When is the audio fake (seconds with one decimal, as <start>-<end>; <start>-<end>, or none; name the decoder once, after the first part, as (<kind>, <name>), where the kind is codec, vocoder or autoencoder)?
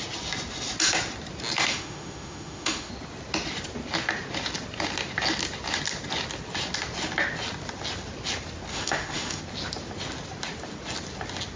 1.7-2.9 (autoencoder, DAC-VAE); 8.7-9.4